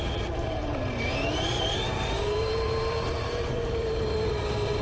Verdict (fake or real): fake